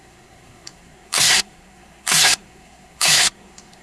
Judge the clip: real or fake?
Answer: fake